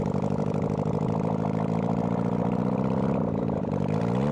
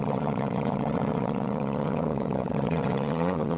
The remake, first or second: second